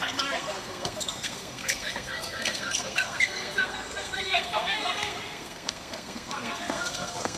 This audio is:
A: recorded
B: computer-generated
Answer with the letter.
B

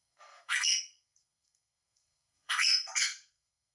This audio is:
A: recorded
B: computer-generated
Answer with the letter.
B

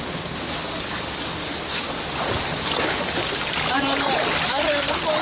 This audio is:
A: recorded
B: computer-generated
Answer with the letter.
A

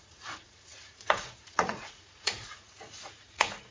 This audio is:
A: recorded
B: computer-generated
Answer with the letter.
B